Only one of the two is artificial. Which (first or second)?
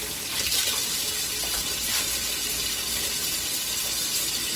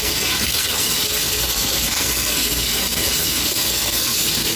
second